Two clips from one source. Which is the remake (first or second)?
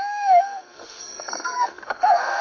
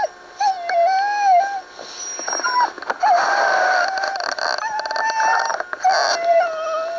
first